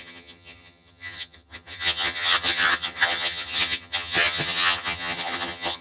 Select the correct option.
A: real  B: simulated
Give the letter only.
B